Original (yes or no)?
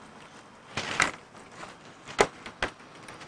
yes